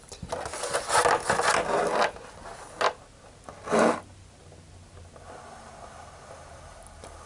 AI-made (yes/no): no